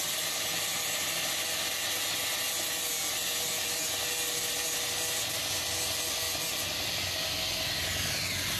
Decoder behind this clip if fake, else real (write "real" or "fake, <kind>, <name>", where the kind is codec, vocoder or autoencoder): real